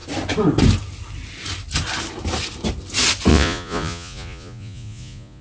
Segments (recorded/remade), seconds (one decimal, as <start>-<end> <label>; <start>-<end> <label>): 0.0-3.3 recorded; 3.3-5.4 remade